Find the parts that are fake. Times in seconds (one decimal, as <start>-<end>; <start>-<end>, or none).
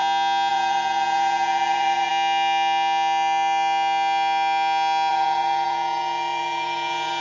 0.5-2.1; 5.1-7.2